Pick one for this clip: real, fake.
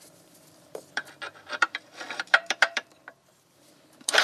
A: fake